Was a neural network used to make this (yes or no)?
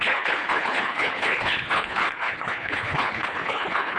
yes